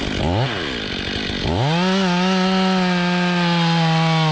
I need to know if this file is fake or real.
real